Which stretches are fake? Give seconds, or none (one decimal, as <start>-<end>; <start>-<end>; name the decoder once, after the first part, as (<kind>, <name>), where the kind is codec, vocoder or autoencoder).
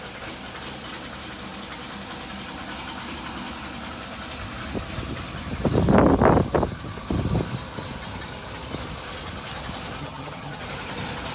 10.0-10.6 (vocoder, HiFi-GAN)